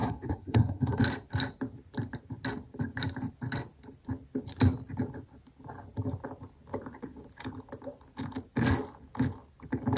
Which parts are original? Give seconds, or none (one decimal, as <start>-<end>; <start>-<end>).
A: 1.0-10.0

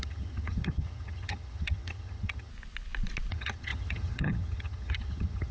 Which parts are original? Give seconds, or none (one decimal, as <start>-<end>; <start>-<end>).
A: 2.5-3.3

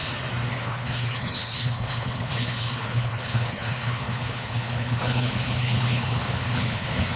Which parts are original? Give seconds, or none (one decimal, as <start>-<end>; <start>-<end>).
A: 0.0-0.5

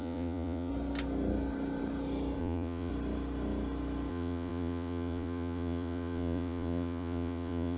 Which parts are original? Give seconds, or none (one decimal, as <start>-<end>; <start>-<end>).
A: 0.7-2.4; 2.9-4.1

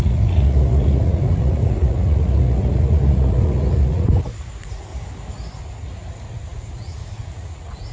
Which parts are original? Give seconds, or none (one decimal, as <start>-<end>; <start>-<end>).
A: 4.9-5.6

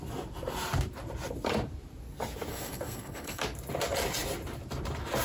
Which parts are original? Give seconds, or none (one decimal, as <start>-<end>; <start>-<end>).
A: 0.0-2.5; 3.4-5.2